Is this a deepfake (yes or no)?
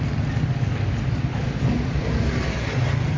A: yes